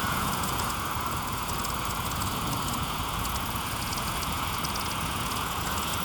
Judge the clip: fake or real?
fake